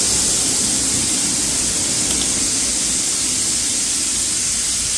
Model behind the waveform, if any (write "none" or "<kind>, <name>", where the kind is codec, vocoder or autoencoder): none